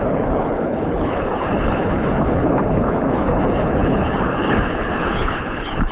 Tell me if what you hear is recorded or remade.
remade